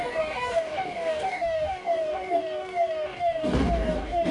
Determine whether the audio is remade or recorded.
remade